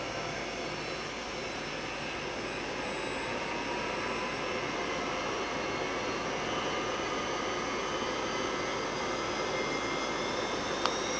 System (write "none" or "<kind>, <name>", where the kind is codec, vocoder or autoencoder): none